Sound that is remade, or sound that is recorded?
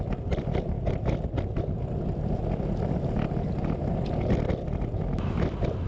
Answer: recorded